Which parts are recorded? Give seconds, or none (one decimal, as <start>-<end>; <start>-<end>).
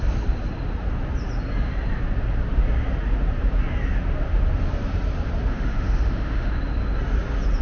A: 0.0-5.5; 6.5-7.6